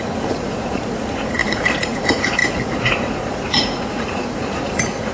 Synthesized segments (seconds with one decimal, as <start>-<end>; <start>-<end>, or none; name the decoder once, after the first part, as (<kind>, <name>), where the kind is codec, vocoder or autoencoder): 0.0-5.1 (vocoder, Vocos)